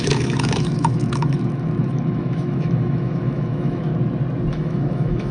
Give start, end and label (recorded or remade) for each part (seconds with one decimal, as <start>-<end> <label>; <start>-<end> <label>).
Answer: 0.0-3.9 remade; 3.9-4.5 recorded; 4.5-5.3 remade